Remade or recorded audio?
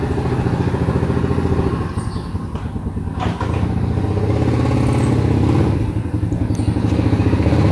recorded